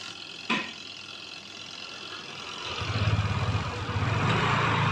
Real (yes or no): yes